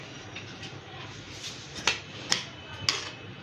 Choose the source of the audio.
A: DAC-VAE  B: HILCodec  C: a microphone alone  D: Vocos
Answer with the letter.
C